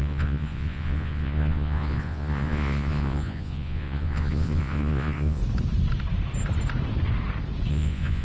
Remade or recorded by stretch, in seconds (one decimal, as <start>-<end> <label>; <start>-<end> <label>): 0.0-5.4 remade; 5.4-7.7 recorded; 7.7-8.2 remade